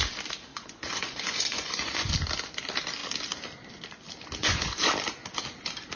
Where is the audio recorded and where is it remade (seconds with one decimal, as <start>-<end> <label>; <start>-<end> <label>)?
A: 0.0-0.5 recorded; 0.5-2.1 remade; 2.1-4.4 recorded; 4.4-4.9 remade; 4.9-6.0 recorded